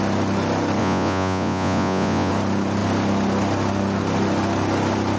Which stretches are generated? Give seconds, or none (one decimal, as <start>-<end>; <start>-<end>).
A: 0.8-2.3